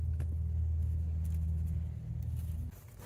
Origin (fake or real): real